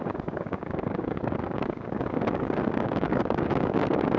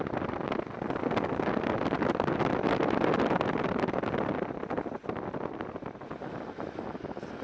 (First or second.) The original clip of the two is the second